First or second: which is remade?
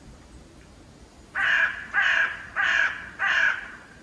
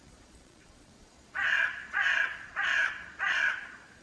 second